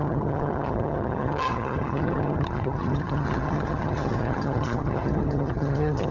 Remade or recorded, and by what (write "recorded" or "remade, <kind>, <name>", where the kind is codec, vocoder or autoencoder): remade, vocoder, HiFi-GAN